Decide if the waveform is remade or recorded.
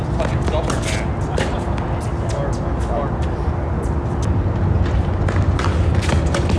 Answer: recorded